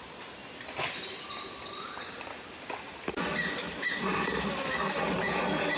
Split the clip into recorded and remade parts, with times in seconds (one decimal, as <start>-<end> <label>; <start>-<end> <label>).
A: 0.0-5.8 recorded